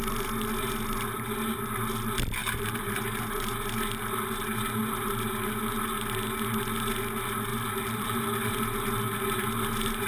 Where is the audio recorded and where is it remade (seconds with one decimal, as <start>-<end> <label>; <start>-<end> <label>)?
0.0-2.4 recorded; 2.4-3.0 remade; 3.0-7.5 recorded; 7.5-8.5 remade; 8.5-10.1 recorded